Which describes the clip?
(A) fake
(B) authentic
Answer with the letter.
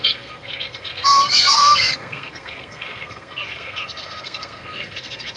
A